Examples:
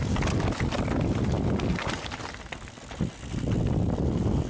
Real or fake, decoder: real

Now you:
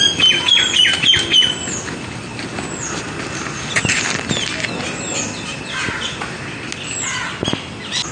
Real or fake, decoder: real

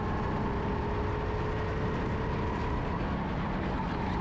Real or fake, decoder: real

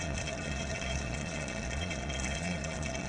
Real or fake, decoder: fake, vocoder, Vocos